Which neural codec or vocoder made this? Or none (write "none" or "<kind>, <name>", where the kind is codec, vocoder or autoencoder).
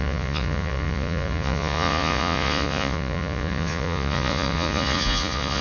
vocoder, Vocos